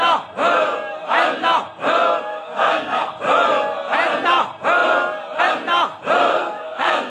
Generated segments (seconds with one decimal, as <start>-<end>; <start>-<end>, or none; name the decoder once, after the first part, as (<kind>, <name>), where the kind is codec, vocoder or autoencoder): 2.3-3.1 (codec, SNAC); 6.3-7.1